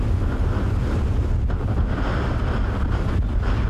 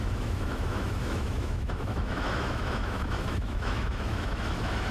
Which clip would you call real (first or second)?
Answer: first